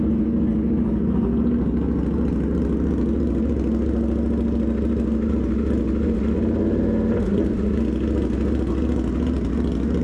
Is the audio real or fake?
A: real